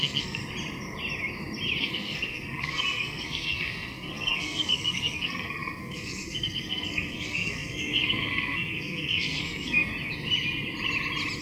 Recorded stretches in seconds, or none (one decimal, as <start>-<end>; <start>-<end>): 0.4-1.8; 9.9-11.4